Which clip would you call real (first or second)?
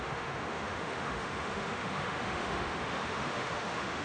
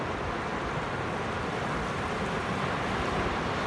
second